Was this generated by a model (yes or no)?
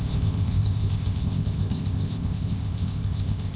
yes